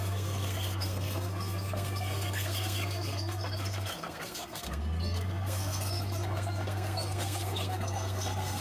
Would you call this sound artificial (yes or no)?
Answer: yes